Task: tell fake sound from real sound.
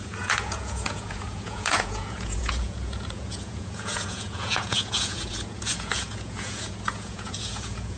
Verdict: fake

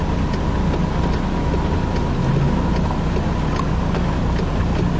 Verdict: real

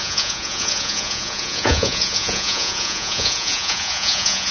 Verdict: fake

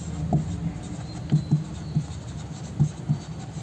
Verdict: real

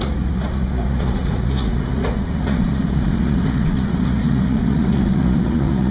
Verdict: fake